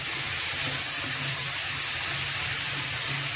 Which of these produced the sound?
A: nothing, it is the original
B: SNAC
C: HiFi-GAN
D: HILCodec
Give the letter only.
A